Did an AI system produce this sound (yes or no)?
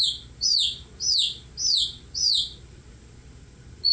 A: no